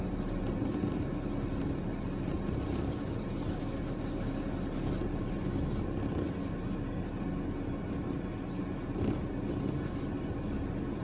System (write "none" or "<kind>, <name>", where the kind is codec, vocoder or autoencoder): none